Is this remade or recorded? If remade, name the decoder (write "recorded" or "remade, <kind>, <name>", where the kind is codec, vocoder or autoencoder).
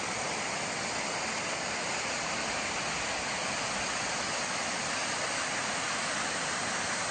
recorded